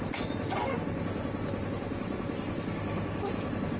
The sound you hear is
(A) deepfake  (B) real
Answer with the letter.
B